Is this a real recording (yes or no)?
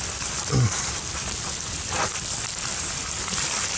yes